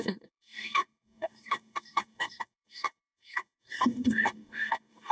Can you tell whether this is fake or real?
fake